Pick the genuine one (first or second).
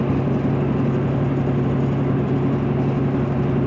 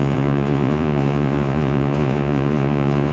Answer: first